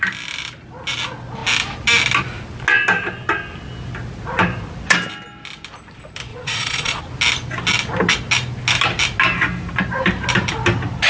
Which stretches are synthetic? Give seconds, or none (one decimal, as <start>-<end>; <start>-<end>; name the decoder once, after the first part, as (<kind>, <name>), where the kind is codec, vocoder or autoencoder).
6.3-7.0 (vocoder, Vocos)